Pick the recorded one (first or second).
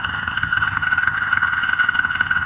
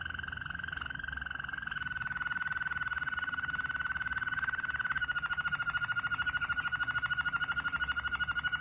second